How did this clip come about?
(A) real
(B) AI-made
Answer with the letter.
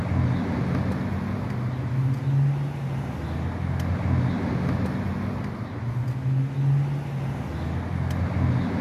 A